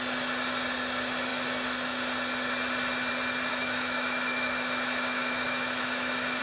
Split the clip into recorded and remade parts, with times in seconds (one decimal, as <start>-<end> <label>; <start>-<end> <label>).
0.0-3.5 recorded; 3.5-6.4 remade